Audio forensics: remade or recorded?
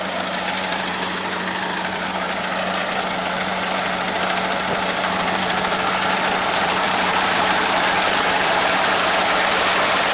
remade